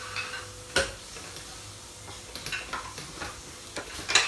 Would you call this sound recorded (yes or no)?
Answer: yes